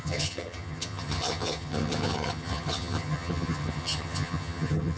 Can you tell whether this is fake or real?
fake